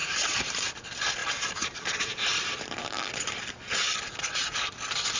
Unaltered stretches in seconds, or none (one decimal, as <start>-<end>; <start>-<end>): 0.7-1.2; 3.4-5.2